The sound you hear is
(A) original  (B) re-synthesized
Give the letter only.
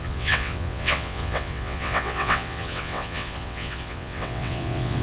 B